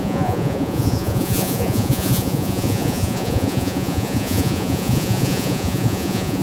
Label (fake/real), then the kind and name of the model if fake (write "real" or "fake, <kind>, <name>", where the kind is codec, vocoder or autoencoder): fake, vocoder, Vocos